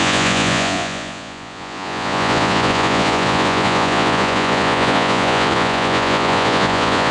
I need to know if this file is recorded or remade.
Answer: remade